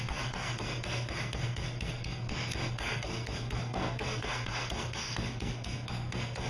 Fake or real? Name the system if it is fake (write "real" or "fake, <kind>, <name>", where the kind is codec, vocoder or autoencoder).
fake, codec, SNAC